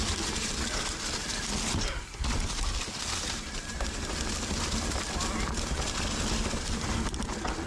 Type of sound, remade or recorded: recorded